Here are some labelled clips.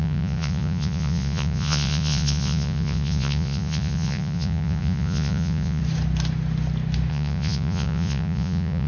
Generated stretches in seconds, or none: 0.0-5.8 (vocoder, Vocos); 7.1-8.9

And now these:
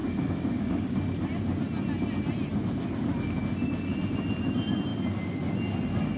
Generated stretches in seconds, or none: 0.0-0.9 (codec, DAC)

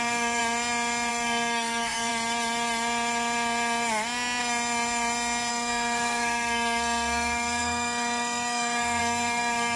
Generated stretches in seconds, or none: 0.0-0.4 (codec, SNAC); 1.1-2.1; 5.5-9.8